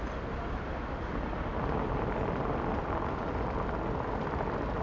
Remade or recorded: recorded